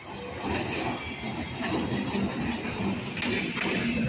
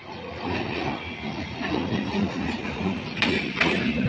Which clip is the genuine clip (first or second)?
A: first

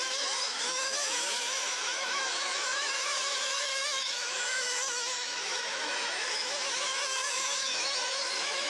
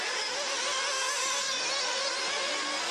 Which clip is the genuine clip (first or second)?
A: second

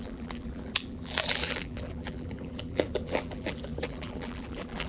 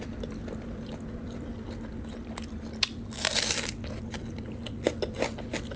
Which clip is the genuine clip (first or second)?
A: second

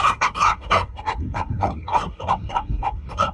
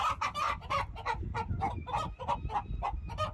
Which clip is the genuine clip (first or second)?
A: second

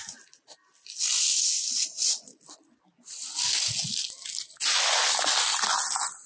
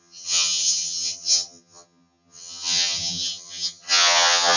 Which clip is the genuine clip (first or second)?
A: first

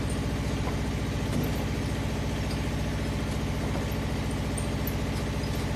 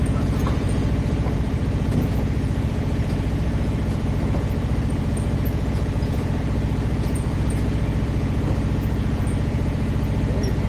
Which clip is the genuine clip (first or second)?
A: first